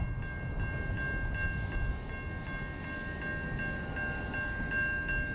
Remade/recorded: recorded